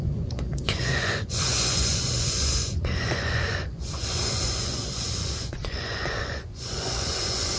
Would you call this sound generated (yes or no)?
yes